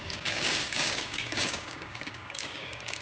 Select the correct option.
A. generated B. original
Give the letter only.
A